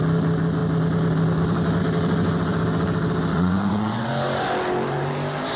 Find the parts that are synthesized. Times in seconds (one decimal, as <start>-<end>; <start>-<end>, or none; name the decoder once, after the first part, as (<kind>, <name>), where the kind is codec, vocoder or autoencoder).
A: 3.3-4.1 (vocoder, WaveNeXt)